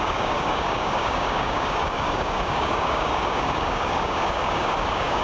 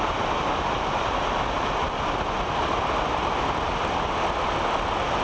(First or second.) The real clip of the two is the second